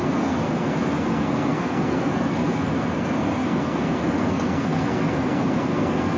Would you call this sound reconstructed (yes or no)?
yes